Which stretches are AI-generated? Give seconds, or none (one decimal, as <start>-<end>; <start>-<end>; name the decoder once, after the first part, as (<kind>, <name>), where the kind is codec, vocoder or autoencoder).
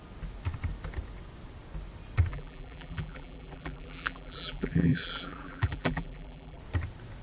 2.3-6.6 (vocoder, BigVGAN v2)